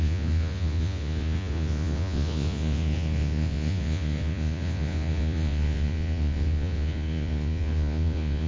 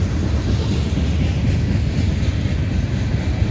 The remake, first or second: first